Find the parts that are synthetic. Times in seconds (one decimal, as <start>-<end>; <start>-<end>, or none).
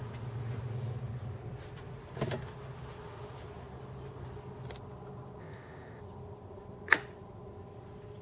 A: 5.4-6.0